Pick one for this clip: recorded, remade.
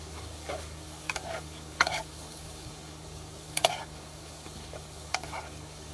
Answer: remade